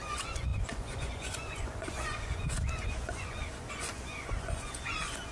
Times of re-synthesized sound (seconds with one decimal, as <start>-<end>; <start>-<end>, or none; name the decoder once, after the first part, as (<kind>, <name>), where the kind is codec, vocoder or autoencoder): 0.0-5.3 (vocoder, Vocos)